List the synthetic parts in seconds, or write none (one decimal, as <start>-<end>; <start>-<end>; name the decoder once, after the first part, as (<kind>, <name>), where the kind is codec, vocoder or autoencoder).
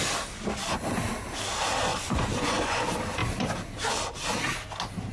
1.9-2.8 (vocoder, Vocos)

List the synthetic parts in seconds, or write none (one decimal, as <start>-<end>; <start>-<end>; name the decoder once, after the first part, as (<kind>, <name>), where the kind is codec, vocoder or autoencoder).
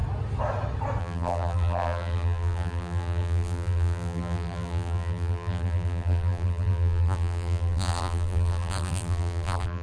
1.0-9.8 (vocoder, BigVGAN v2)